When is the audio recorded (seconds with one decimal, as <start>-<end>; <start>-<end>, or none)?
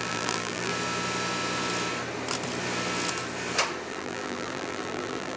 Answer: 0.7-3.9